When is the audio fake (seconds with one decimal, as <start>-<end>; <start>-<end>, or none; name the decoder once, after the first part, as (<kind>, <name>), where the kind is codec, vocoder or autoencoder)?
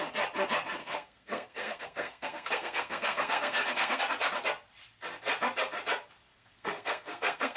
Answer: 0.8-4.0 (codec, SNAC); 6.3-7.6